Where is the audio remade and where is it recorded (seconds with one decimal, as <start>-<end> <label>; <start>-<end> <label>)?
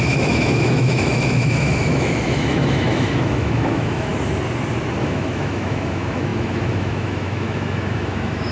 0.0-4.1 remade; 4.1-5.0 recorded; 5.0-8.5 remade